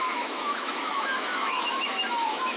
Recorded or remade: remade